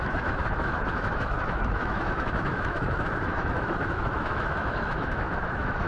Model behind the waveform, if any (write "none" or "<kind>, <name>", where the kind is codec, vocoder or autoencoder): autoencoder, DAC-VAE